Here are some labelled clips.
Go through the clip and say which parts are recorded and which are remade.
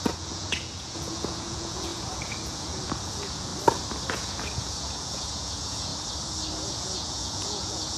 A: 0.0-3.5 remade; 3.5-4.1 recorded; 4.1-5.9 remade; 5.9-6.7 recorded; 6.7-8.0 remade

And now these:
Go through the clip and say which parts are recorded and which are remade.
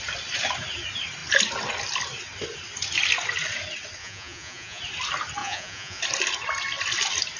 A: 0.0-4.0 recorded; 4.0-4.8 remade; 4.8-5.4 recorded; 5.4-6.0 remade; 6.0-7.4 recorded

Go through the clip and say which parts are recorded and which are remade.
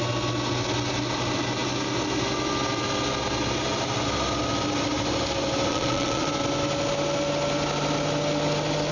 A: 0.0-5.7 recorded; 5.7-6.3 remade; 6.3-8.9 recorded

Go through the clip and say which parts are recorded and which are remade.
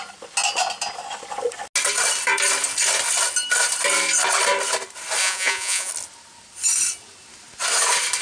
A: 0.0-5.2 recorded; 5.2-5.9 remade; 5.9-8.2 recorded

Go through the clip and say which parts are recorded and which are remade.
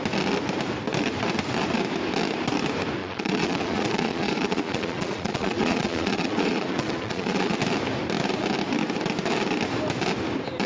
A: 0.0-3.0 recorded; 3.0-7.6 remade; 7.6-10.7 recorded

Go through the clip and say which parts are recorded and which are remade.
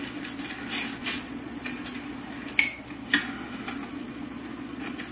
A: 0.0-1.0 recorded; 1.0-2.1 remade; 2.1-3.9 recorded; 3.9-5.1 remade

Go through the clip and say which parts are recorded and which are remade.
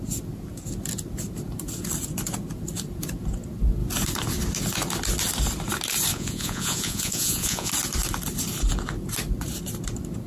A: 0.0-6.1 recorded; 6.1-7.7 remade; 7.7-10.3 recorded